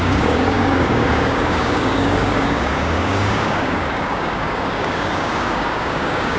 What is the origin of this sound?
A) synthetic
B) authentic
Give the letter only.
A